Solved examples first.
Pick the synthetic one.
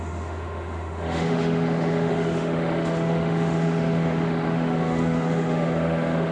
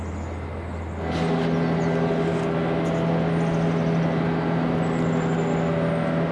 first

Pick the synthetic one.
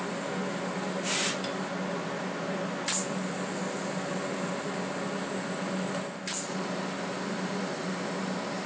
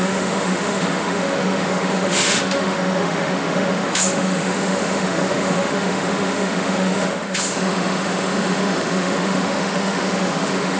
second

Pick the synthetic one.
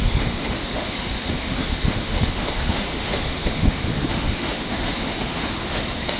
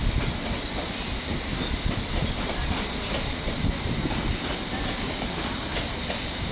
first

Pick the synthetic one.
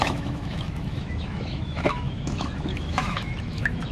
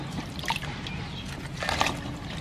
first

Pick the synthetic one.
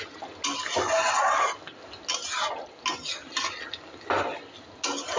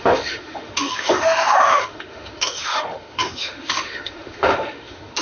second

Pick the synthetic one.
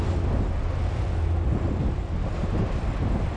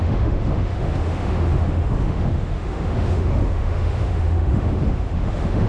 second